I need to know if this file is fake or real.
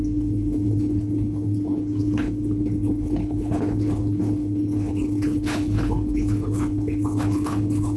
fake